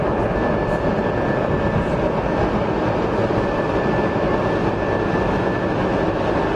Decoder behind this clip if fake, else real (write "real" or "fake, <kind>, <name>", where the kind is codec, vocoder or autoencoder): real